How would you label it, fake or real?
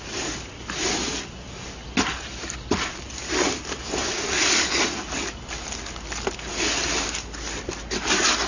real